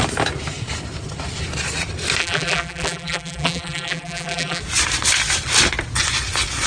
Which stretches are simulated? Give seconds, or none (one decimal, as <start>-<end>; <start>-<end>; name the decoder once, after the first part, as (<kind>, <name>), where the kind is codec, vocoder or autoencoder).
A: 2.2-4.6 (vocoder, BigVGAN v2)